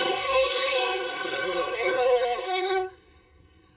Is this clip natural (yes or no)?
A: no